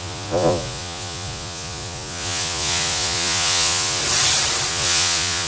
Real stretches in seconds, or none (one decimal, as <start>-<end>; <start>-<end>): 4.0-4.7